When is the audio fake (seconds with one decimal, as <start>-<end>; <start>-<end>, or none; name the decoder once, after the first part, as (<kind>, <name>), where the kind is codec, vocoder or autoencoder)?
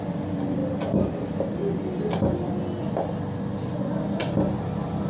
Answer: none